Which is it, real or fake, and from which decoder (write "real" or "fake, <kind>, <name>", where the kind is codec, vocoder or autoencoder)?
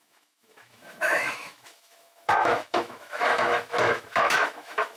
fake, autoencoder, DAC-VAE